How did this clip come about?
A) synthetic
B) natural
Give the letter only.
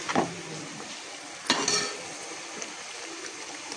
B